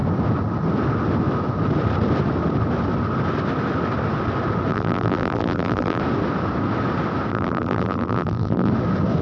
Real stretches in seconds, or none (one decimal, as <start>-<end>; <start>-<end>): 0.0-4.7; 6.0-7.3; 8.7-9.2